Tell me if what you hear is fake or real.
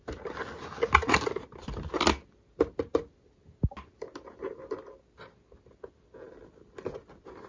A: real